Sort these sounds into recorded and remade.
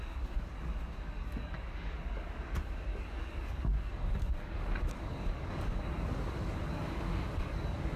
remade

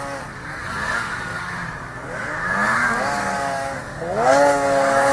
remade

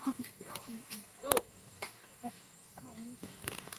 remade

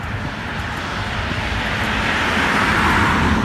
recorded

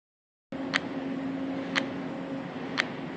recorded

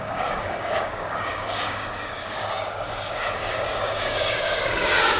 remade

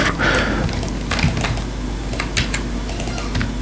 recorded